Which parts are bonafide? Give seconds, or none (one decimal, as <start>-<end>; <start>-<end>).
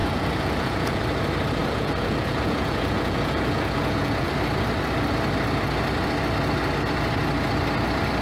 1.0-1.6; 4.3-8.2